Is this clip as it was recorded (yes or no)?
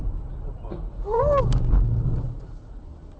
yes